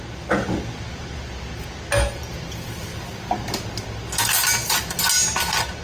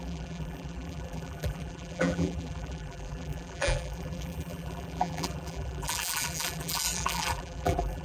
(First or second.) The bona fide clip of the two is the first